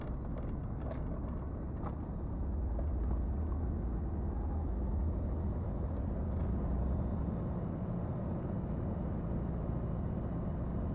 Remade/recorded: recorded